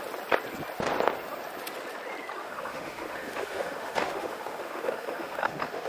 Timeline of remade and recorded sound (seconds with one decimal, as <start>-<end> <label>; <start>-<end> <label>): 0.0-2.4 recorded; 2.4-5.9 remade

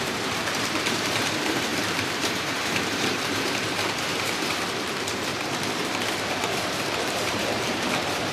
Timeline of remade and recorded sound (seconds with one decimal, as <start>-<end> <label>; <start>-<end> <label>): 0.0-5.3 remade; 5.3-6.1 recorded; 6.1-8.3 remade

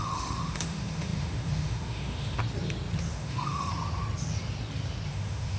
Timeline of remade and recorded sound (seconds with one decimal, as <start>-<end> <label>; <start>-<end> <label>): 0.0-2.4 remade; 2.4-3.1 recorded; 3.1-3.7 remade; 3.7-5.1 recorded; 5.1-5.6 remade

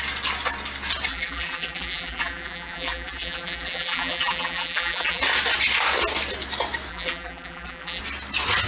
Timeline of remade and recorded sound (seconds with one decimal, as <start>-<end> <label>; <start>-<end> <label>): 0.0-1.1 recorded; 1.1-5.2 remade; 5.2-6.9 recorded; 6.9-8.0 remade; 8.0-8.7 recorded

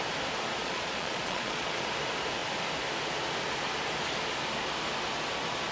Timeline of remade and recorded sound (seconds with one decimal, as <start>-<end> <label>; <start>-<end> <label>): 0.0-0.6 recorded; 0.6-1.8 remade; 1.8-5.7 recorded

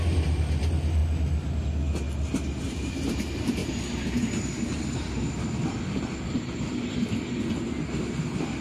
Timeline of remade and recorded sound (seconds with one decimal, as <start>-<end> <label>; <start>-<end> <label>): 0.0-8.6 recorded

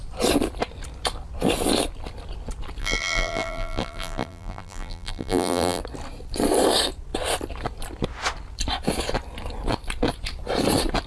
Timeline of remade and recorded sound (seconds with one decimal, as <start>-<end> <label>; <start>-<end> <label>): 0.0-2.8 recorded; 2.8-5.8 remade; 5.8-11.1 recorded